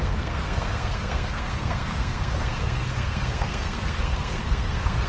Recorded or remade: remade